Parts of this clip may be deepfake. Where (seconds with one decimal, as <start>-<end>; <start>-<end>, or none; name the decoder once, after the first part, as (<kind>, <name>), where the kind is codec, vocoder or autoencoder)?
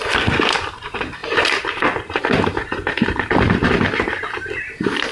1.2-4.0 (vocoder, BigVGAN v2)